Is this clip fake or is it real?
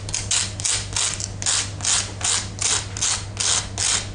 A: real